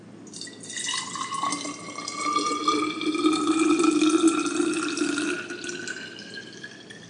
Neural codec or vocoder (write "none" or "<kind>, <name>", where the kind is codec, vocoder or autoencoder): none